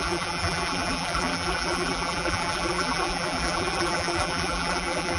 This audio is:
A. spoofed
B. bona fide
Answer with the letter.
A